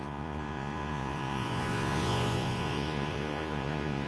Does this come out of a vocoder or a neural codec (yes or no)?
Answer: yes